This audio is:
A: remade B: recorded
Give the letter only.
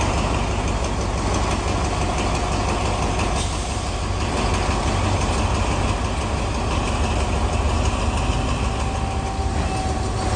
B